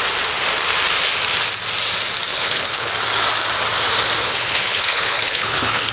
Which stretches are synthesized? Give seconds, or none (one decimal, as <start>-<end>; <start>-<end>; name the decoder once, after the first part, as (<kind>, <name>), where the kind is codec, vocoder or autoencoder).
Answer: 2.3-2.9 (codec, HILCodec); 4.2-5.9